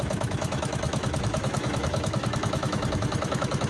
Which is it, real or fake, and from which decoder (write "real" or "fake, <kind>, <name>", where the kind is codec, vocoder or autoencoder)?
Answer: fake, autoencoder, DAC-VAE